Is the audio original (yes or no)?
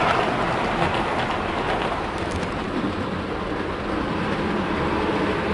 yes